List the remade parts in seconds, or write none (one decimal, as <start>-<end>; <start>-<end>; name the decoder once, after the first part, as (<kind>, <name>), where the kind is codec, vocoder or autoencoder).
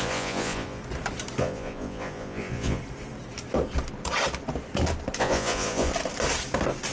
0.0-0.8 (vocoder, Vocos); 1.4-2.8; 5.2-5.9